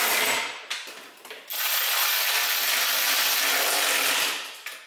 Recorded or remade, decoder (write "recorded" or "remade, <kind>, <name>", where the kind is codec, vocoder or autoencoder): recorded